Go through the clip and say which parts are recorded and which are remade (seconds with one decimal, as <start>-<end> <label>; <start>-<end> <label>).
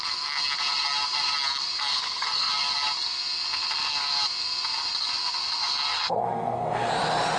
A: 0.0-1.9 recorded; 1.9-2.5 remade; 2.5-5.9 recorded; 5.9-6.9 remade; 6.9-7.4 recorded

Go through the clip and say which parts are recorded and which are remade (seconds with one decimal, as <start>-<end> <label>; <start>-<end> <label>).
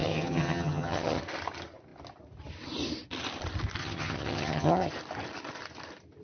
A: 0.0-1.2 remade; 1.2-3.8 recorded; 3.8-4.9 remade; 4.9-6.2 recorded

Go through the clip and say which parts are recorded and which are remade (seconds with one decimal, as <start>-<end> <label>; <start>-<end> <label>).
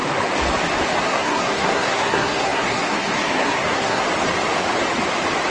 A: 0.0-1.0 recorded; 1.0-4.0 remade; 4.0-5.5 recorded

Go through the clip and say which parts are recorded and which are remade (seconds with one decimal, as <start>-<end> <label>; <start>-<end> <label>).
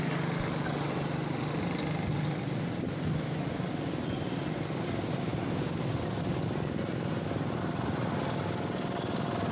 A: 0.0-9.5 recorded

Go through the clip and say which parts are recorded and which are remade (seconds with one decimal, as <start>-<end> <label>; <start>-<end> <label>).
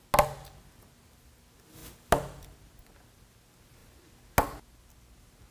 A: 0.0-5.5 recorded